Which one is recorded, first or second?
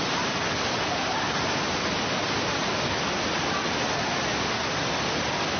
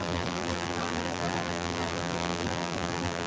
first